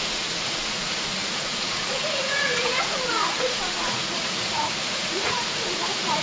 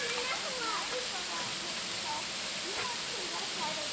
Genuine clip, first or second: second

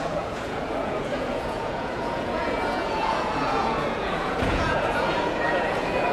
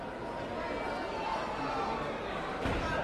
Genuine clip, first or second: second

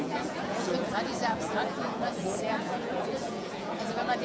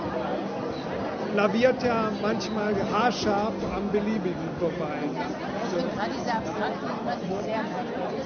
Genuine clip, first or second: second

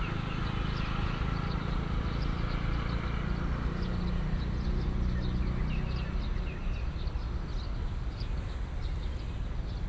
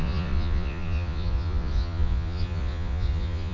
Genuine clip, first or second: first